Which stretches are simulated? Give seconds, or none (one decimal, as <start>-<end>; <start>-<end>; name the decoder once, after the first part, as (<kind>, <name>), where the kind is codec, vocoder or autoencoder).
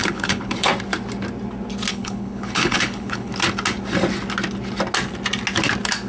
0.0-0.7 (codec, HILCodec); 1.9-3.3